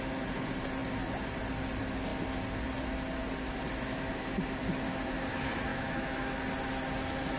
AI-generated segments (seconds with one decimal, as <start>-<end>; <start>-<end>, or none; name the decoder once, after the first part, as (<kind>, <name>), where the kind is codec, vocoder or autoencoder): 5.7-6.3 (autoencoder, DAC-VAE)